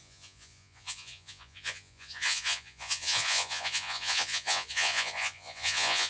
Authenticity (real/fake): fake